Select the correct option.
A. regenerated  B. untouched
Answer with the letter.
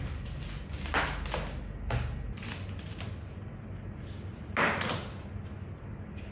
B